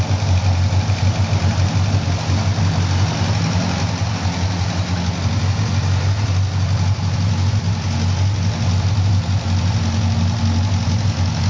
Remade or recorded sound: recorded